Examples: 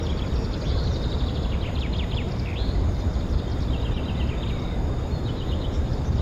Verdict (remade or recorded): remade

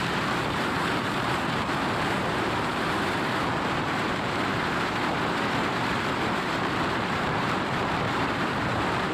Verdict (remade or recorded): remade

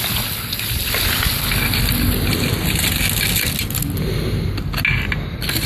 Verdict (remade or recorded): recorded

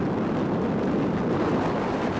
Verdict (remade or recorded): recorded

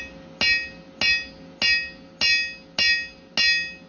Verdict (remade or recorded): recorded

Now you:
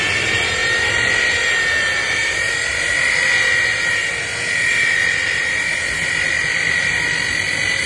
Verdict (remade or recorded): recorded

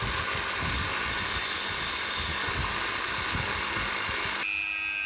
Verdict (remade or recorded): recorded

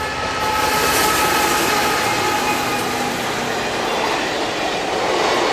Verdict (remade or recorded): recorded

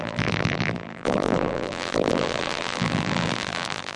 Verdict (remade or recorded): remade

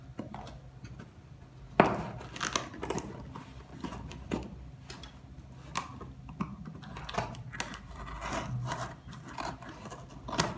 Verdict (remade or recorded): recorded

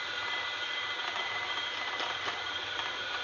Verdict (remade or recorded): remade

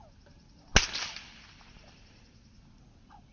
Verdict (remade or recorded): recorded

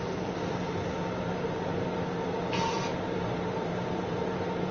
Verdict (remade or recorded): remade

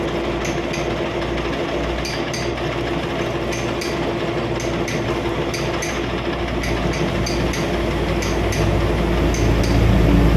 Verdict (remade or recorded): recorded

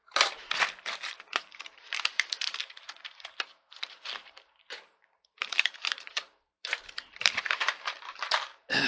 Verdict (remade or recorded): remade